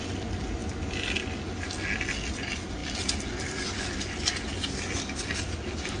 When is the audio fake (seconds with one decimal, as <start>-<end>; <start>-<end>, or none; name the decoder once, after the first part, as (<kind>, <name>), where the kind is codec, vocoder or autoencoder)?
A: none